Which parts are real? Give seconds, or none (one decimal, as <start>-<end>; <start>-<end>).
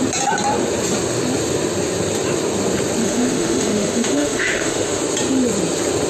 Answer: 0.0-3.0; 5.0-6.1